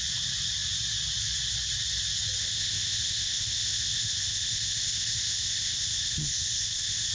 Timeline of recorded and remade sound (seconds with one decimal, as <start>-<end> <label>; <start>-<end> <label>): 0.0-2.4 recorded; 2.4-7.1 remade